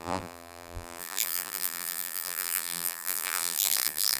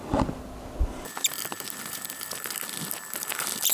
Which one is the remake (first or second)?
first